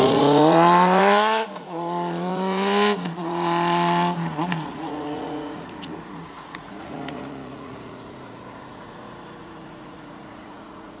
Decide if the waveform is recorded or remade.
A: remade